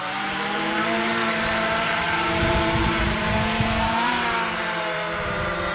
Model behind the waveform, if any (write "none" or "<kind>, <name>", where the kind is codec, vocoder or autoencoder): vocoder, BigVGAN v2